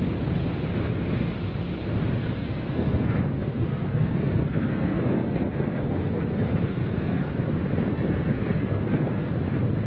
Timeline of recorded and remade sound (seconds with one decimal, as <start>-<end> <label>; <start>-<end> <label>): 0.0-2.2 recorded; 2.2-7.3 remade; 7.3-7.9 recorded; 7.9-9.3 remade; 9.3-9.9 recorded